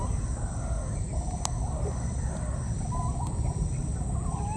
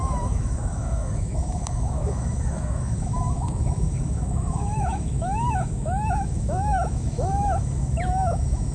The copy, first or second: second